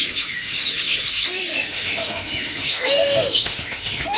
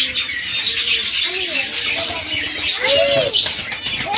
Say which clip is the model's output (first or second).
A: first